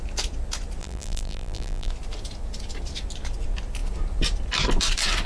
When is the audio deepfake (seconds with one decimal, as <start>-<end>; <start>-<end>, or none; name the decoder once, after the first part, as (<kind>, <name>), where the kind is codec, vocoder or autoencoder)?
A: 0.8-1.9 (vocoder, BigVGAN v2)

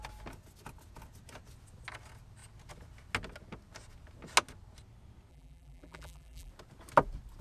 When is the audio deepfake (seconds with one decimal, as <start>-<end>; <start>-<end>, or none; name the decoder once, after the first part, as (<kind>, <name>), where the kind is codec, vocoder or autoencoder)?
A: 5.3-6.5 (vocoder, BigVGAN v2)

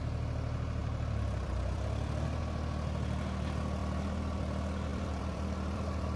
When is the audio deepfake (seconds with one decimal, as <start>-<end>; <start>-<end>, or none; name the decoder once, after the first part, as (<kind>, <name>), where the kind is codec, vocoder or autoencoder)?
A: 0.8-2.4 (vocoder, BigVGAN v2); 3.8-4.4; 4.9-6.2

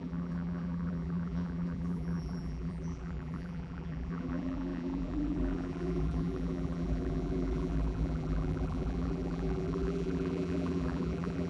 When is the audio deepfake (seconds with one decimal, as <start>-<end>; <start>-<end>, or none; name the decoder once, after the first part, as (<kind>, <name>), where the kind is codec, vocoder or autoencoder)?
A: 0.0-11.5 (vocoder, BigVGAN v2)

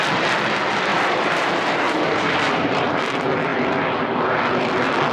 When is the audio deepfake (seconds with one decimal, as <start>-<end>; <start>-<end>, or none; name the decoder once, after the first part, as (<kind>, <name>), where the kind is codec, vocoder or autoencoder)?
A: 0.9-3.0 (vocoder, BigVGAN v2)